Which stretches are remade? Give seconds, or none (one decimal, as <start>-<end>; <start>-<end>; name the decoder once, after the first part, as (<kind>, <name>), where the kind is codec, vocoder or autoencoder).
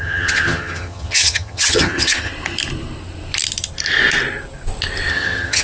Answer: 0.0-2.3 (vocoder, HiFi-GAN); 5.1-5.6